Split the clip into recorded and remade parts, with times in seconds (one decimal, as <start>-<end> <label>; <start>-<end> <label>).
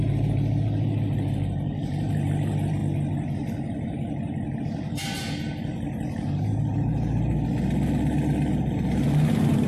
0.0-2.8 remade; 2.8-4.6 recorded; 4.6-7.3 remade; 7.3-8.5 recorded; 8.5-9.7 remade